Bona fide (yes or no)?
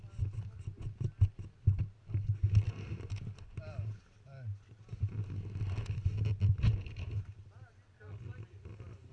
yes